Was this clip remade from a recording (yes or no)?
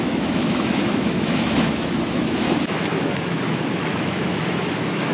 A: yes